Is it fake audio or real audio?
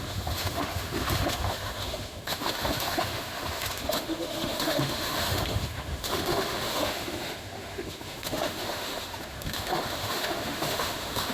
fake